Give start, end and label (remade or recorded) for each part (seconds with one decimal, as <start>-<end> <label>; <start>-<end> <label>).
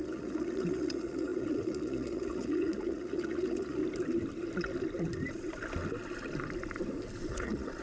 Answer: 0.0-3.8 remade; 3.8-7.3 recorded; 7.3-7.8 remade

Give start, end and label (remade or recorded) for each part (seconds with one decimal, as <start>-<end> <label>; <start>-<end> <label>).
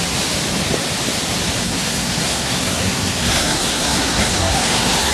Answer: 0.0-1.6 recorded; 1.6-5.1 remade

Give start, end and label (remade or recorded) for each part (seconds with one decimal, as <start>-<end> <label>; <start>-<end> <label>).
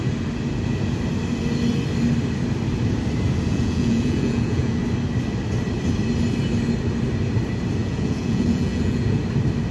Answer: 0.0-3.5 recorded; 3.5-4.8 remade; 4.8-7.8 recorded; 7.8-9.2 remade; 9.2-9.7 recorded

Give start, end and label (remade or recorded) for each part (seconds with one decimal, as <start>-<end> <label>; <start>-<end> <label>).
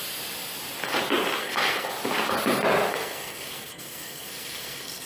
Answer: 0.0-1.4 recorded; 1.4-1.9 remade; 1.9-2.9 recorded; 2.9-5.1 remade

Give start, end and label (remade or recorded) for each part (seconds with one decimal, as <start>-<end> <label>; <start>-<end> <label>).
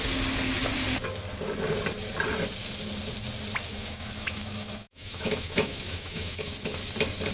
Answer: 0.0-3.7 recorded; 3.7-6.5 remade; 6.5-7.3 recorded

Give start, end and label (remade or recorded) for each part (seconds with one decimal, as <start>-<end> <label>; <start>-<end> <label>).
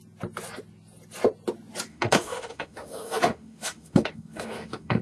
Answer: 0.0-1.9 recorded; 1.9-5.0 remade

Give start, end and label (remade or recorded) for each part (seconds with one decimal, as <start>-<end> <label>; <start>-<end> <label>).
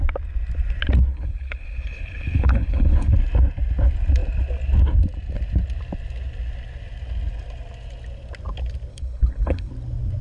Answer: 0.0-1.1 recorded; 1.1-3.1 remade; 3.1-8.9 recorded; 8.9-9.7 remade; 9.7-10.2 recorded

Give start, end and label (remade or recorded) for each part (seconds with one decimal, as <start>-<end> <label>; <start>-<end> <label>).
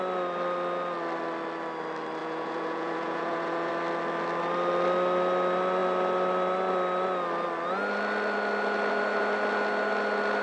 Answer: 0.0-2.2 recorded; 2.2-3.7 remade; 3.7-10.4 recorded